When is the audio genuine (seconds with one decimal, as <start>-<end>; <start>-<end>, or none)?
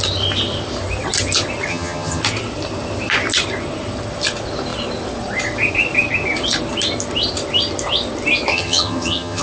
0.0-1.7; 2.2-8.5